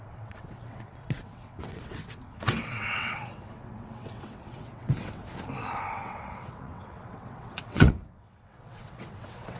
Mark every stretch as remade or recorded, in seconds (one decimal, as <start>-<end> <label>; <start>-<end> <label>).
0.0-5.2 remade; 5.2-5.9 recorded; 5.9-9.6 remade